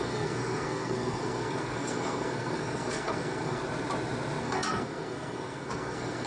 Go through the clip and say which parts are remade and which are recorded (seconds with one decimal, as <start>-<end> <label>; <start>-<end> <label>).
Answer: 0.0-3.6 remade; 3.6-4.4 recorded; 4.4-6.3 remade